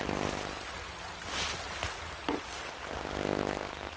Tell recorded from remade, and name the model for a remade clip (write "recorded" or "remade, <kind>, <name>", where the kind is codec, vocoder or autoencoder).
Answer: recorded